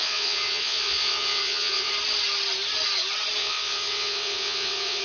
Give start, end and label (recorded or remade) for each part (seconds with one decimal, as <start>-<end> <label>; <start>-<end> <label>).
0.0-1.9 remade; 1.9-3.4 recorded; 3.4-5.0 remade